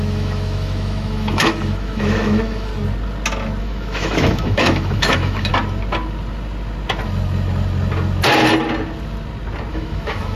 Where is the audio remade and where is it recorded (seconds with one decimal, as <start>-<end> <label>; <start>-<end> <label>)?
0.0-2.7 remade; 2.7-3.6 recorded; 3.6-5.5 remade; 5.5-9.7 recorded; 9.7-10.4 remade